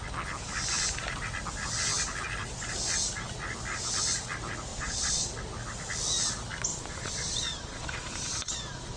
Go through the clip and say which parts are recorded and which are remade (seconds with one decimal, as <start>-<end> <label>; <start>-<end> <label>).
0.0-4.7 recorded; 4.7-5.2 remade; 5.2-6.7 recorded; 6.7-9.0 remade